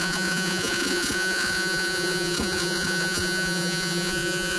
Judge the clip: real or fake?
fake